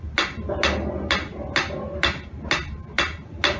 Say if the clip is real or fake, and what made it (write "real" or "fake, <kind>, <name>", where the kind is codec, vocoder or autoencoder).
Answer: real